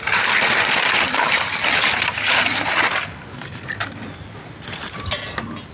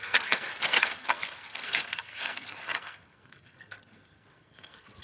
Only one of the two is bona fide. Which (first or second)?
first